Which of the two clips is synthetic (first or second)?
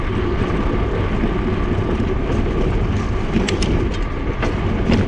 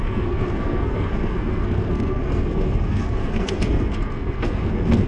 second